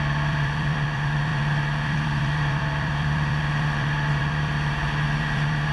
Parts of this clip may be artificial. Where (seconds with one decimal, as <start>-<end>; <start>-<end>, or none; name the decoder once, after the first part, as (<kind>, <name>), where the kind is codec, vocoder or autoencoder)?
0.0-5.7 (vocoder, BigVGAN v2)